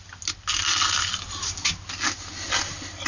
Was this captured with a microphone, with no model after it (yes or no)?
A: yes